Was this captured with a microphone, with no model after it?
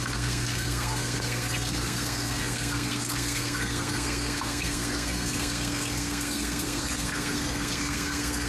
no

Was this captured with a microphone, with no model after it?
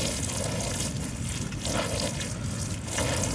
yes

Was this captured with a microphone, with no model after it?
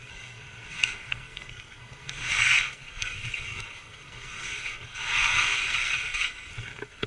no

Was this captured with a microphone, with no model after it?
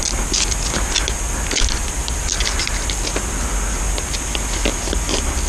yes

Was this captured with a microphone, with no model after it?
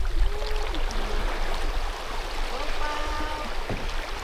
yes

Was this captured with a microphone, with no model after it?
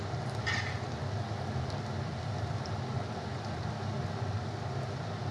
yes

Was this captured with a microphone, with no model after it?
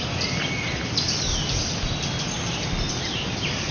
yes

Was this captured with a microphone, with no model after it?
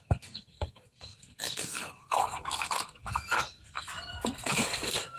no